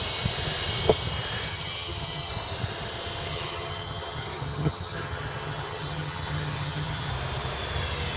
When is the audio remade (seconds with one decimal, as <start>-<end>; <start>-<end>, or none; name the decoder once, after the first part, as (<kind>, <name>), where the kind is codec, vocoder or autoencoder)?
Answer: 1.5-2.3 (vocoder, HiFi-GAN); 3.3-7.1